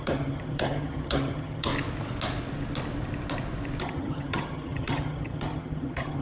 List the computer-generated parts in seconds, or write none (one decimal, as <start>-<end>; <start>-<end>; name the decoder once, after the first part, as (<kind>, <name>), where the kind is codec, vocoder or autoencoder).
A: 0.0-1.7 (vocoder, HiFi-GAN); 3.8-6.2